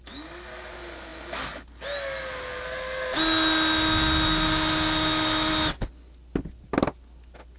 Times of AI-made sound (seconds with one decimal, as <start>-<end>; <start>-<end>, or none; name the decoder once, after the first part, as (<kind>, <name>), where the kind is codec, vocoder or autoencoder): none